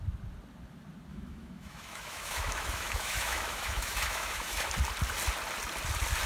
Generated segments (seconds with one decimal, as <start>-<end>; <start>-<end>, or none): 1.1-4.7